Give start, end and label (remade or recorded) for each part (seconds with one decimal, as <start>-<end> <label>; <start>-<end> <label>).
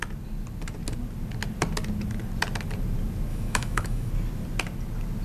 0.0-3.3 recorded; 3.3-4.1 remade; 4.1-5.2 recorded